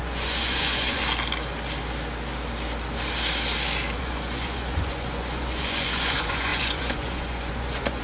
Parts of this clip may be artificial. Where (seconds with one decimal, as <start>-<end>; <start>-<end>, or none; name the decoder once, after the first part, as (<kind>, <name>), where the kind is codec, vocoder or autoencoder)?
0.0-1.0 (vocoder, Vocos); 4.0-8.0